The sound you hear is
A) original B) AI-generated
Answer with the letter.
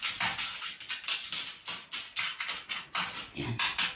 A